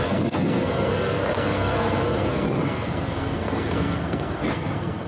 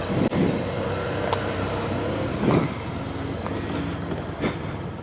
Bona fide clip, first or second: second